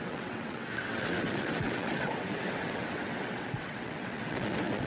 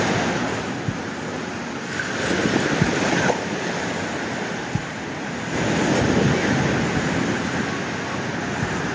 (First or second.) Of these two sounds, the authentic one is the second